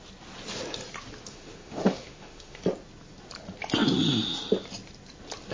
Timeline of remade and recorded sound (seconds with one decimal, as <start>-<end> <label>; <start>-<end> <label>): 0.0-1.3 recorded; 1.3-2.6 remade; 2.6-5.5 recorded